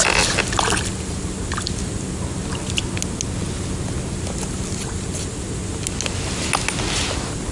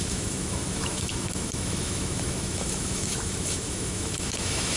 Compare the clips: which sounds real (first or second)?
first